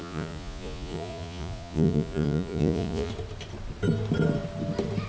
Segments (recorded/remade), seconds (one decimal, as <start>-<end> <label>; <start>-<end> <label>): 0.0-3.1 remade; 3.1-5.1 recorded